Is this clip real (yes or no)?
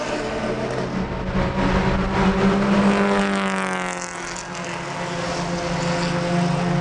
yes